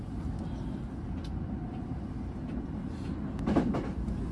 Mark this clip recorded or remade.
recorded